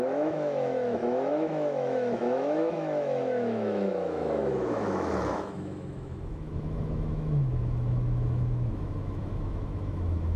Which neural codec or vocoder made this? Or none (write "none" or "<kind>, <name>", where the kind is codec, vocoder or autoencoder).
autoencoder, DAC-VAE